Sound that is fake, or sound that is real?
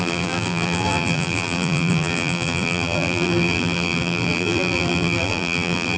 fake